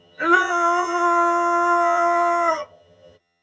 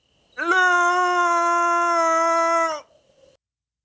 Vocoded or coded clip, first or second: first